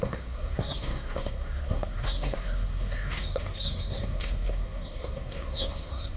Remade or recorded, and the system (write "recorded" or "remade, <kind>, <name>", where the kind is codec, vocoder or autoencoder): remade, codec, SNAC